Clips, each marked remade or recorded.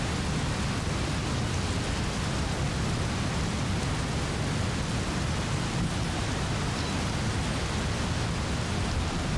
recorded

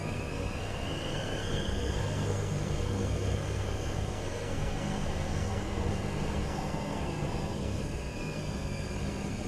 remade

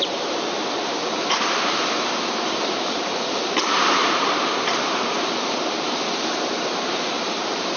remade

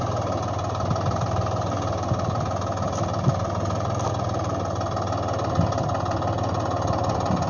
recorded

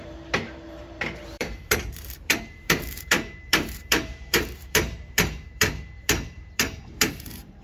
remade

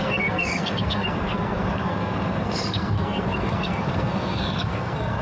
remade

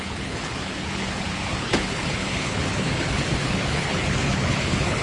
remade